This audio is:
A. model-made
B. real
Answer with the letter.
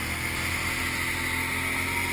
B